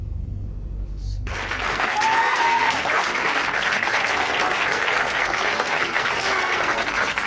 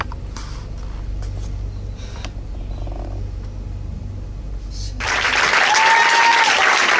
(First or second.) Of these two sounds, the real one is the second